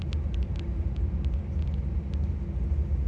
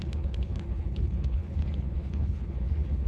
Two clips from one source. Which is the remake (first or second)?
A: second